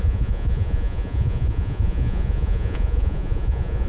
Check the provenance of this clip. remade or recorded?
remade